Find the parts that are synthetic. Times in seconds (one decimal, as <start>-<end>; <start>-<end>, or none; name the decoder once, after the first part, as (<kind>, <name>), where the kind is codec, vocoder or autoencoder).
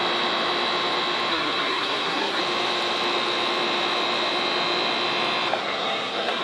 1.3-2.4 (codec, SNAC); 5.6-6.4